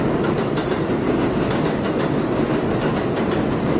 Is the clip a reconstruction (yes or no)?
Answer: no